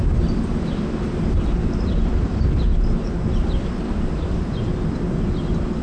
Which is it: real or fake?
fake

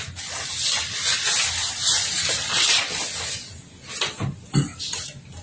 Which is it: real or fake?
real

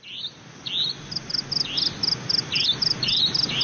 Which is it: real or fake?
real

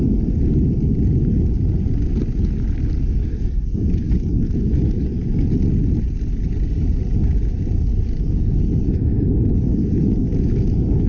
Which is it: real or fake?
real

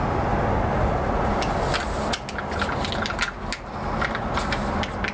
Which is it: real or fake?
real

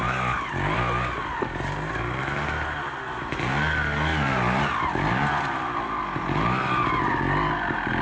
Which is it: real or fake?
real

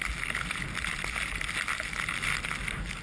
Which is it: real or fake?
real